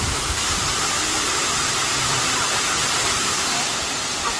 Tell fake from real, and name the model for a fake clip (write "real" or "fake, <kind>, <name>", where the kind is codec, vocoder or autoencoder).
real